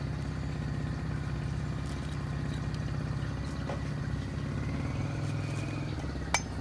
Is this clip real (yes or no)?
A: yes